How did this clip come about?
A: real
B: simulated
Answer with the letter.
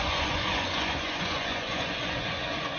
B